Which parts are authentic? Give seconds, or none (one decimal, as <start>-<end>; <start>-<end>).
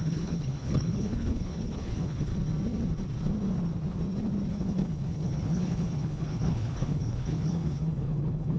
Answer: 2.3-4.5